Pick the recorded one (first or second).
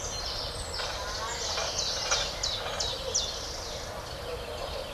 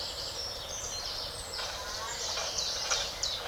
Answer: first